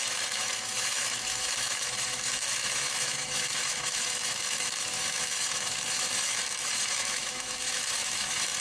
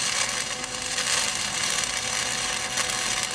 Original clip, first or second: second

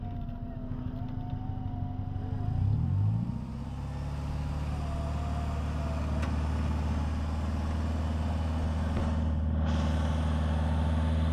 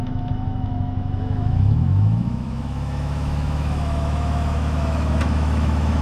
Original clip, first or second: first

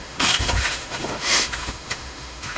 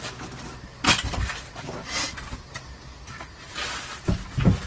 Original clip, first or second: second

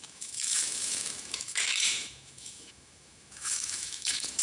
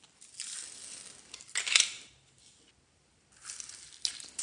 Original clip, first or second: second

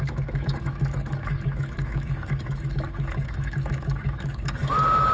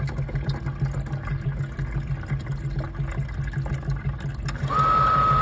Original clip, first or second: second